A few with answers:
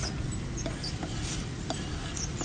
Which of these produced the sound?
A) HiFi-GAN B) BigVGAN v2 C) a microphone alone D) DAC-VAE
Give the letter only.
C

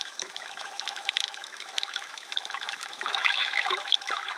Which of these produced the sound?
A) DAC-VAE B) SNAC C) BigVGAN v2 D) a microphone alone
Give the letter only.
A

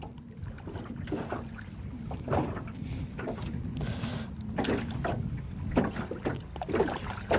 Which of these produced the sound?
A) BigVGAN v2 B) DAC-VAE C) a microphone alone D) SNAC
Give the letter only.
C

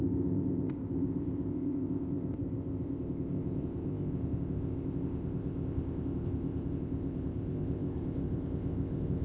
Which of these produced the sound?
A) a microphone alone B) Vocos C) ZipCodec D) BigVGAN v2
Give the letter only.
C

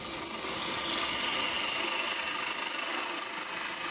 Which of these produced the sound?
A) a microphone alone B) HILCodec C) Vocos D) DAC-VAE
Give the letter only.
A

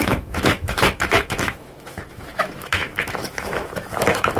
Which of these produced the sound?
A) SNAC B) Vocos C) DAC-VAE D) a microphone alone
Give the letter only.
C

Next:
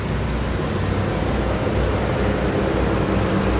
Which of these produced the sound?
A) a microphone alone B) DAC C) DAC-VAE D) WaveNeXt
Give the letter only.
A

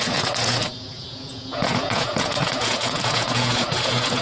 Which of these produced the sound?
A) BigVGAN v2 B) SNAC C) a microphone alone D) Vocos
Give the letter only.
D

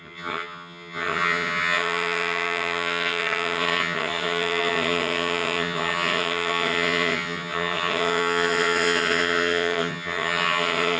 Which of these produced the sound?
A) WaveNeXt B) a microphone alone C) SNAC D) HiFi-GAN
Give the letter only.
D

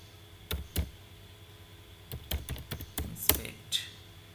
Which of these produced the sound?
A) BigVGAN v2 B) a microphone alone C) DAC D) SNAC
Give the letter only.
B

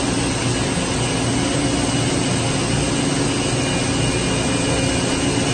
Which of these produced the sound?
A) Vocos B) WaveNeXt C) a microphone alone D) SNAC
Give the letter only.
C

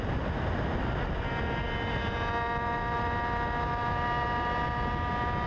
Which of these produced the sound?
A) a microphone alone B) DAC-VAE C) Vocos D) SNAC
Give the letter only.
A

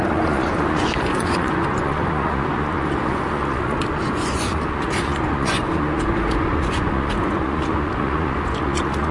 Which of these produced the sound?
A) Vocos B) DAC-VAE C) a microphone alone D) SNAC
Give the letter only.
A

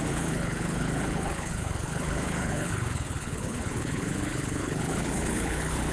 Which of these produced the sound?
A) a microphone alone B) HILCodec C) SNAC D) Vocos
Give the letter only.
B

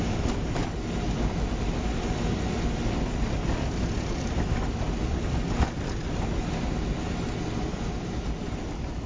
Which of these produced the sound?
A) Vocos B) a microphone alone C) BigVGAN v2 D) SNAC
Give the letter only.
B